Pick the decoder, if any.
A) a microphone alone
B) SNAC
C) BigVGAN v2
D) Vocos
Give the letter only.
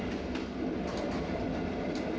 A